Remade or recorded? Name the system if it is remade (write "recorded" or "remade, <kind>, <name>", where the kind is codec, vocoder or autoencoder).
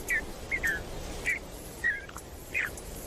remade, vocoder, BigVGAN v2